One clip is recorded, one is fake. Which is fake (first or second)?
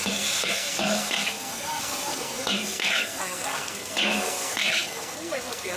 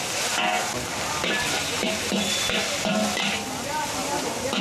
first